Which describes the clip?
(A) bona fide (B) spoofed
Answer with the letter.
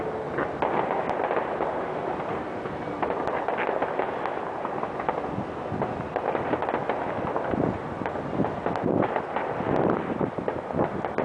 A